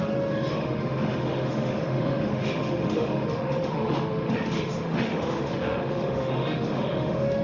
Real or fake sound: fake